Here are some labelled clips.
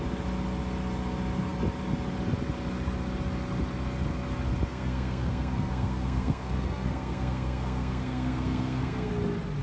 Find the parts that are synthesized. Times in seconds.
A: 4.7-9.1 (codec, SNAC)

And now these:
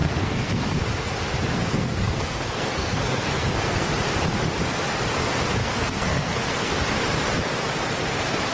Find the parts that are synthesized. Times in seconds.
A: 0.0-0.8 (codec, SNAC); 1.5-3.9; 5.6-6.7

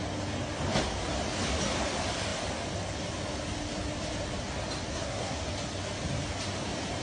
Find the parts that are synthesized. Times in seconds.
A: 4.9-5.4 (codec, SNAC)

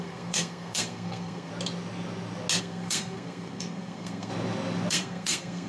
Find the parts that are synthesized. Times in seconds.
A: 0.0-1.5 (codec, SNAC); 2.6-4.3; 4.9-5.7

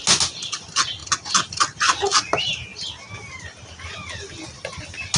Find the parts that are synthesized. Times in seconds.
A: none

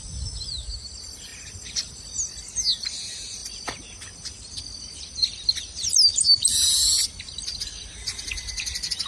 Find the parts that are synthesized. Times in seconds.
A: none